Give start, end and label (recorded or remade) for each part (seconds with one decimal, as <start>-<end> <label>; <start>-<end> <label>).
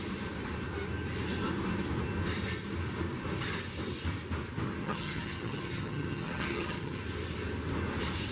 0.0-4.8 recorded; 4.8-7.0 remade; 7.0-8.3 recorded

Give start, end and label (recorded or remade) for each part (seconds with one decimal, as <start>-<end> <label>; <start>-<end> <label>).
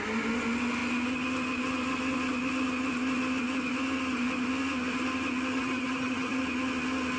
0.0-5.5 recorded; 5.5-6.4 remade; 6.4-7.2 recorded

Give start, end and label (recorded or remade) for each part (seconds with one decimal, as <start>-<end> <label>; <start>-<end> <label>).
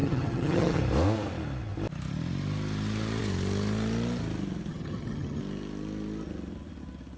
0.0-0.8 remade; 0.8-4.7 recorded; 4.7-5.4 remade; 5.4-7.2 recorded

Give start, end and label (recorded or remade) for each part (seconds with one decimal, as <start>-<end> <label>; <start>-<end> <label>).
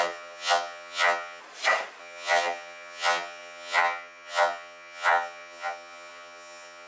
0.0-1.4 remade; 1.4-2.0 recorded; 2.0-6.9 remade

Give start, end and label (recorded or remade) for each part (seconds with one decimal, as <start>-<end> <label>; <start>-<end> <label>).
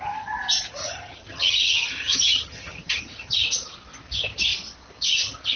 0.0-0.8 recorded; 0.8-3.3 remade; 3.3-5.6 recorded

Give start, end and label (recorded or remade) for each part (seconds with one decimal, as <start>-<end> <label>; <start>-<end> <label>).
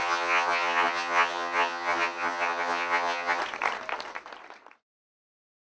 0.0-3.4 remade; 3.4-5.7 recorded